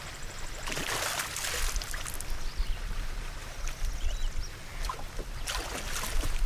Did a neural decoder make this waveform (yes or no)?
no